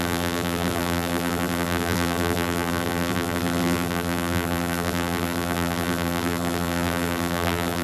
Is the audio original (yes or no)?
no